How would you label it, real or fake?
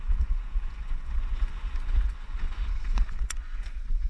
fake